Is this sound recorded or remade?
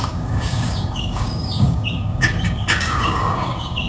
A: remade